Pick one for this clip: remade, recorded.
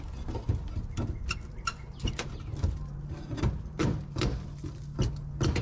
recorded